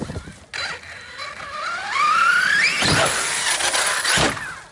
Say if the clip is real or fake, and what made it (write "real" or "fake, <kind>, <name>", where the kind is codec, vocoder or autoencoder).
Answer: real